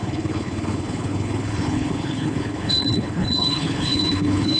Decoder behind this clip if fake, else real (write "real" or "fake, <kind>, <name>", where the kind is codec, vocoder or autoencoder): fake, codec, HILCodec